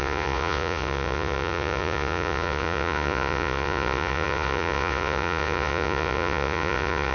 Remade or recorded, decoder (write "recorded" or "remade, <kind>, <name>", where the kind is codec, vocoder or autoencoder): remade, vocoder, Vocos